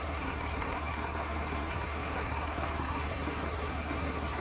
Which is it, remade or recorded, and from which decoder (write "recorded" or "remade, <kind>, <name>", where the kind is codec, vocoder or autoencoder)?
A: remade, codec, SNAC